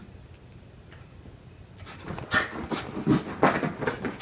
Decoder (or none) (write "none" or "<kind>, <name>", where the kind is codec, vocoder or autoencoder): none